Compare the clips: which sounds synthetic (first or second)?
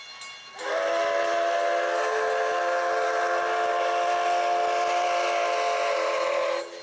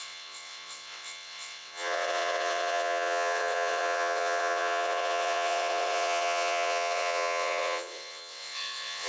second